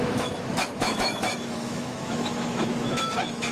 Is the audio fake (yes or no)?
yes